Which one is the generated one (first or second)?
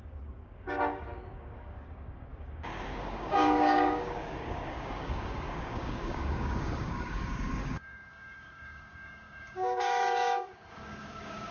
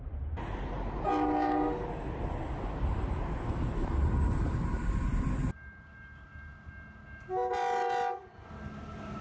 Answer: first